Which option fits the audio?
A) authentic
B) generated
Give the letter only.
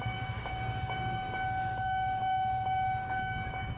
B